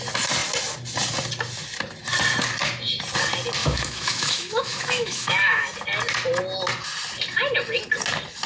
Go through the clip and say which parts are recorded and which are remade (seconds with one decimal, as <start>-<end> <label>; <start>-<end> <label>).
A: 0.0-3.6 recorded; 3.6-5.6 remade; 5.6-8.5 recorded

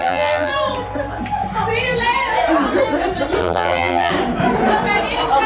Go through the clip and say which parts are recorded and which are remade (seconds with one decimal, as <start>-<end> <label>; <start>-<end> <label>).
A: 0.0-0.5 remade; 0.5-3.4 recorded; 3.4-4.1 remade; 4.1-5.5 recorded

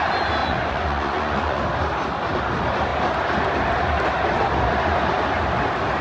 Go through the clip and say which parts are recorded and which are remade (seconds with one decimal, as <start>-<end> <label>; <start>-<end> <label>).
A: 0.0-0.4 recorded; 0.4-1.6 remade; 1.6-6.0 recorded